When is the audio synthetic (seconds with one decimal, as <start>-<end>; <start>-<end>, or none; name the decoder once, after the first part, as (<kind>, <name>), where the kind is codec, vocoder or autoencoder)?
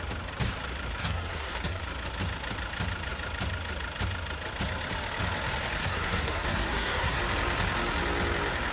1.0-1.8 (codec, SNAC); 5.8-7.2